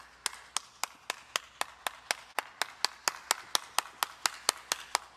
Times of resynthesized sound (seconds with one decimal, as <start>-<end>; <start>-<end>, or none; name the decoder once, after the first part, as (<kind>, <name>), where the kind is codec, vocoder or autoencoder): none